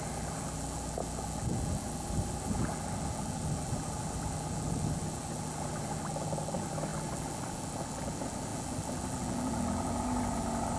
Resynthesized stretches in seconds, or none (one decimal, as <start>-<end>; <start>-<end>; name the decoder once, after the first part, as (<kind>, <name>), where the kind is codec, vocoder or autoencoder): none